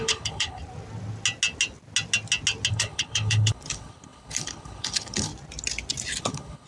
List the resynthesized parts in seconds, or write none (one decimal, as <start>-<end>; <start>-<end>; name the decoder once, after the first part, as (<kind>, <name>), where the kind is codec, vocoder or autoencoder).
0.0-0.6 (codec, HILCodec); 2.7-5.3; 6.2-6.7